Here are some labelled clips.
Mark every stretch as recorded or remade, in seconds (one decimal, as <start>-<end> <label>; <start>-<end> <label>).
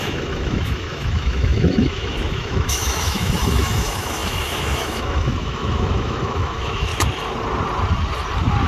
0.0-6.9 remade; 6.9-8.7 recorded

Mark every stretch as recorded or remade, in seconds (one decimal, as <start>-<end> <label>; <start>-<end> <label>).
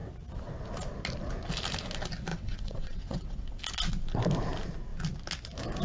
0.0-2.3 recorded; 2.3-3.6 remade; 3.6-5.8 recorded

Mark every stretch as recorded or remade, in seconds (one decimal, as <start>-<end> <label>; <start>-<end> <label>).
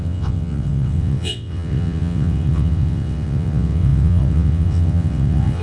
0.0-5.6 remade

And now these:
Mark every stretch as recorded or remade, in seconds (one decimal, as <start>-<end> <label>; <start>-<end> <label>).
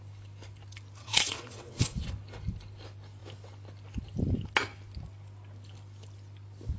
0.0-1.0 recorded; 1.0-2.1 remade; 2.1-6.8 recorded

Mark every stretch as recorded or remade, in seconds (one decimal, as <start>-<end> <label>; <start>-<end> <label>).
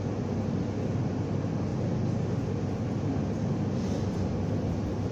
0.0-5.1 recorded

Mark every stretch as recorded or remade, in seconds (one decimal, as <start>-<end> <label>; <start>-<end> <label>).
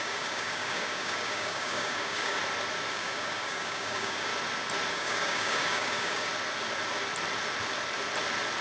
0.0-2.4 remade; 2.4-2.9 recorded; 2.9-4.3 remade; 4.3-4.9 recorded; 4.9-6.3 remade; 6.3-8.6 recorded